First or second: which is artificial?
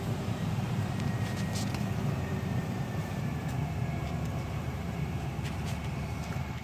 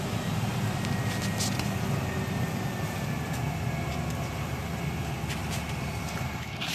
first